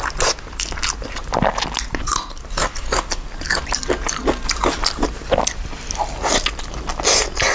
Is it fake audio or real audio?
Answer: real